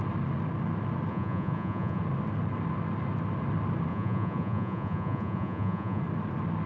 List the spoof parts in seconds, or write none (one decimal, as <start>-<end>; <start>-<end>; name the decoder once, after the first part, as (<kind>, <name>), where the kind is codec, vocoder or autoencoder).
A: 1.1-2.0 (vocoder, Vocos); 3.9-6.0